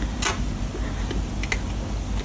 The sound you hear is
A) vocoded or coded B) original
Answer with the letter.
B